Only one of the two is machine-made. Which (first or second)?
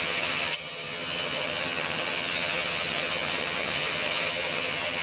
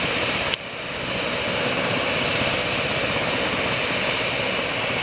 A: first